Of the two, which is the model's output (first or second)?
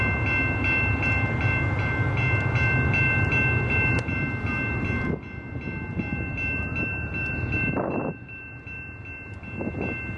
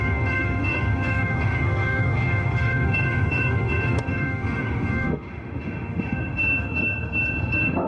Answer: second